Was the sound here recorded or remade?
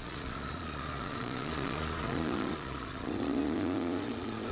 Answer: remade